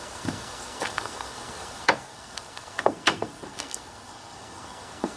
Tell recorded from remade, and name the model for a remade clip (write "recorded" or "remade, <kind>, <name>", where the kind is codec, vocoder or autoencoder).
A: remade, codec, SNAC